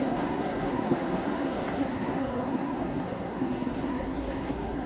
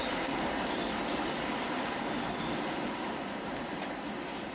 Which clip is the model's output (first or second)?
first